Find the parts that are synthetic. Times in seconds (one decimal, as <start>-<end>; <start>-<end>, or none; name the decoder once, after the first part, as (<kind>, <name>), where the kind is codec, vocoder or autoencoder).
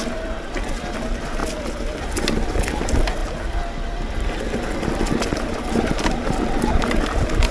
none